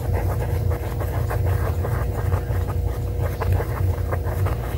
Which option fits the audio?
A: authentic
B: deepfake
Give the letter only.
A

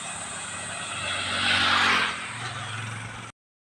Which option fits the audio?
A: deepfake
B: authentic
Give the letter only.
B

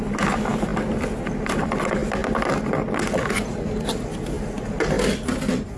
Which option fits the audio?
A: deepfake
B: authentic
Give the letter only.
B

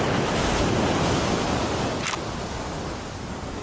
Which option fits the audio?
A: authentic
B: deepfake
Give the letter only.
A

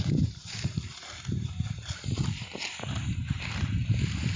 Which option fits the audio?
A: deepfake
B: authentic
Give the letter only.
A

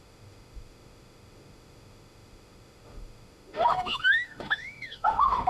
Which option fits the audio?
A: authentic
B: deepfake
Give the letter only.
B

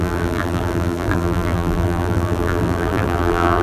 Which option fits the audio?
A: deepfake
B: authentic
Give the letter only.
A